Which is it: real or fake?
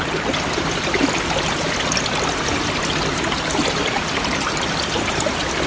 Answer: real